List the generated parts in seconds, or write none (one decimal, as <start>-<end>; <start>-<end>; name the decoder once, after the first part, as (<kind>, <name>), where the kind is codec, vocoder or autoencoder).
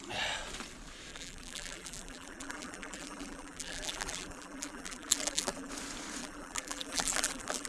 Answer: 1.1-5.7 (vocoder, BigVGAN v2); 6.2-7.7